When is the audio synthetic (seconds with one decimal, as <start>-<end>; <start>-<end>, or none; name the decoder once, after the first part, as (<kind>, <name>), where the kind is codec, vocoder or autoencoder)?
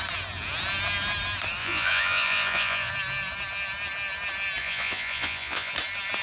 1.6-2.9 (vocoder, Vocos); 4.6-5.7